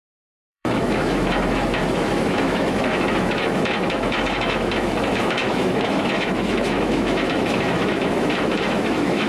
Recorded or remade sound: remade